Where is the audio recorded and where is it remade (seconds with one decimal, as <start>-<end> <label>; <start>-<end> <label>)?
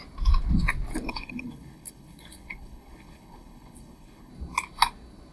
0.0-1.1 recorded; 1.1-4.3 remade; 4.3-5.3 recorded